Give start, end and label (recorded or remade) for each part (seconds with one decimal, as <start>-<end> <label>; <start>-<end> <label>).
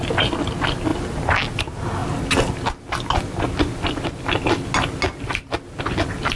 0.0-6.4 recorded